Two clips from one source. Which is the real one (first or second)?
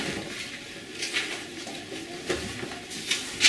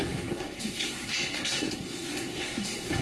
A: first